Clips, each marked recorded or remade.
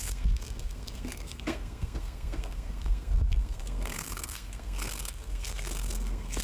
remade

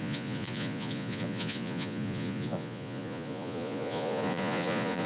remade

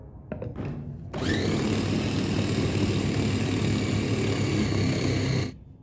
recorded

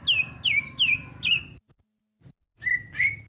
recorded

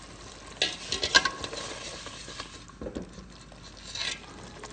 recorded